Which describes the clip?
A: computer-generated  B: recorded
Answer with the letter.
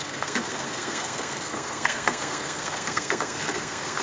A